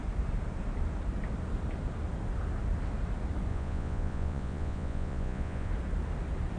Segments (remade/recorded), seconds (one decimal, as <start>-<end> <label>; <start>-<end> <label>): 0.0-3.5 recorded; 3.5-5.7 remade; 5.7-6.6 recorded